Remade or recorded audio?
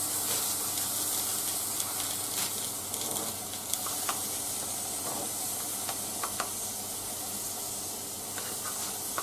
recorded